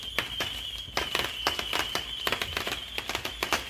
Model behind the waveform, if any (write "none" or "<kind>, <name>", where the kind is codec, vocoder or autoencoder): none